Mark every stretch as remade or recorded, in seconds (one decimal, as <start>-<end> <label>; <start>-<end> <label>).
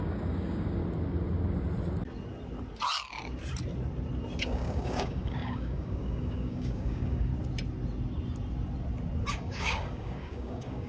0.0-0.8 remade; 0.8-4.4 recorded; 4.4-7.3 remade; 7.3-9.3 recorded; 9.3-10.9 remade